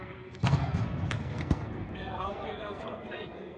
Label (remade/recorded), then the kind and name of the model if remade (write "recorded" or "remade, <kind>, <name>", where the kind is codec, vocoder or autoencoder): remade, codec, SNAC